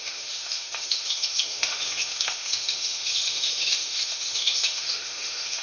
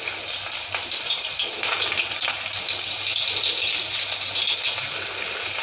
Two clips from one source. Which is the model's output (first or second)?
first